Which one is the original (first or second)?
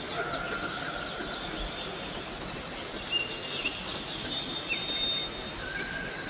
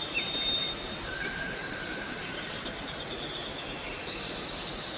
first